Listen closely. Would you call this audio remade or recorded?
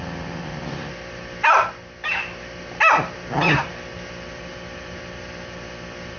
recorded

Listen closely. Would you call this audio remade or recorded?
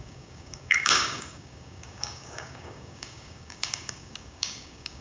remade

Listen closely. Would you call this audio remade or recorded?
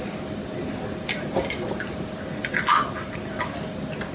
recorded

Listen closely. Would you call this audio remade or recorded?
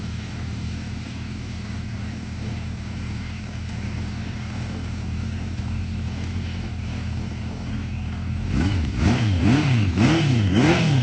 remade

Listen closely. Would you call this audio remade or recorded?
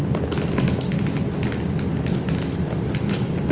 recorded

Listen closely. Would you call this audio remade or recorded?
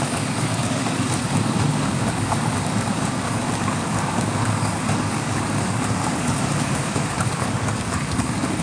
remade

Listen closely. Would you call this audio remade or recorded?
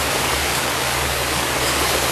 remade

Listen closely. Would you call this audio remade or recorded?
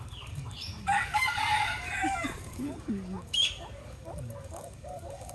remade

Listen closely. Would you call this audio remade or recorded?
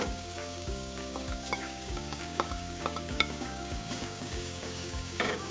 remade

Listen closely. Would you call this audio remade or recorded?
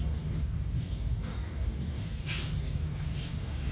remade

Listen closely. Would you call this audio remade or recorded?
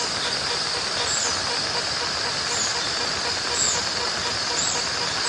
recorded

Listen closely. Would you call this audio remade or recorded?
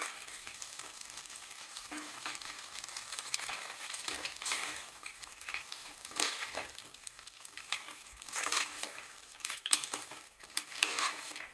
remade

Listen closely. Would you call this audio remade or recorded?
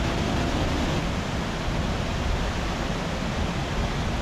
recorded